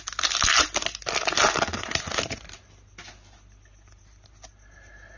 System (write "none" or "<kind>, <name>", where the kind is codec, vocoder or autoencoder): none